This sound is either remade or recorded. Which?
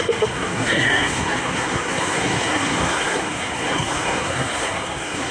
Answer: remade